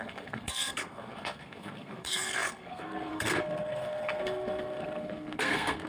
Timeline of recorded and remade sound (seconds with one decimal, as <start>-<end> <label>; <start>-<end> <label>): 0.0-5.9 remade